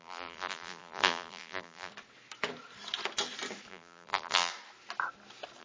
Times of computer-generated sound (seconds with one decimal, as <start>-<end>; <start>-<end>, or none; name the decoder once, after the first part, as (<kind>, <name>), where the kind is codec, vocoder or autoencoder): 0.0-1.9 (vocoder, BigVGAN v2); 3.7-4.5